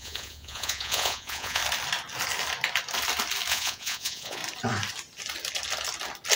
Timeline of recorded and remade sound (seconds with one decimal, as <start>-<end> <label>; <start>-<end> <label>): 0.0-1.6 remade; 1.6-3.5 recorded; 3.5-4.4 remade; 4.4-6.4 recorded